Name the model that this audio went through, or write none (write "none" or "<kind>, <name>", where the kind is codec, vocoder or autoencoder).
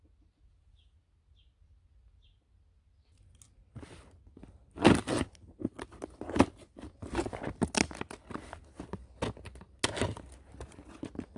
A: none